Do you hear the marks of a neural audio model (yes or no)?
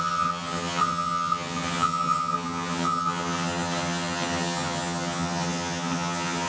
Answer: yes